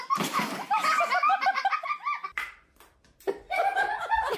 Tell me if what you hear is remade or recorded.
remade